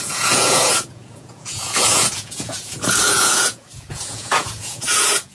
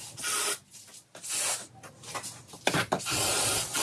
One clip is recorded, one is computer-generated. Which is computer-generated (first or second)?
first